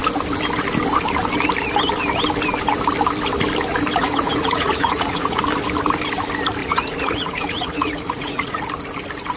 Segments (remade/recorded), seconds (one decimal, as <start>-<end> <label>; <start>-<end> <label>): 0.0-4.0 recorded; 4.0-5.4 remade; 5.4-6.6 recorded; 6.6-8.6 remade; 8.6-9.4 recorded